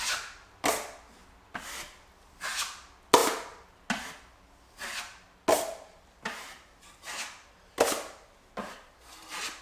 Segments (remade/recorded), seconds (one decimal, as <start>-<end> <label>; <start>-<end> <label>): 0.0-9.6 recorded